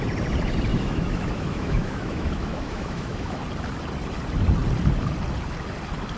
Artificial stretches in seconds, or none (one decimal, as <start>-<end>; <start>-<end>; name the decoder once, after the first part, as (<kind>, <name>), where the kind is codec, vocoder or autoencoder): 0.7-3.4 (autoencoder, DAC-VAE)

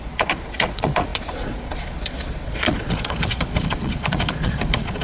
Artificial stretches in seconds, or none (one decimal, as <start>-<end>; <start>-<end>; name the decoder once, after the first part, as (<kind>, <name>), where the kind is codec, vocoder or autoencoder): 0.0-5.0 (vocoder, Vocos)

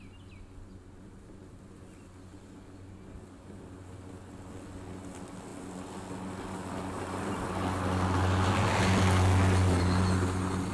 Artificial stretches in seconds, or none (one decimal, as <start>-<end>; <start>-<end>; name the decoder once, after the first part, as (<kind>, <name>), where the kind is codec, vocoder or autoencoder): none

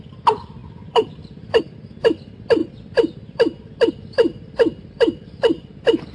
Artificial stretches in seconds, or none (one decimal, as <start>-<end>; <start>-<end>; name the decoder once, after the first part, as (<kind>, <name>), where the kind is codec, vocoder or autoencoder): none

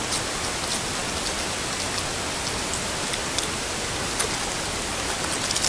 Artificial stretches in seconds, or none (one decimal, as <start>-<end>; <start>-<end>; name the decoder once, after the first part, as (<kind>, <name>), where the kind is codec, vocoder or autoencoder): none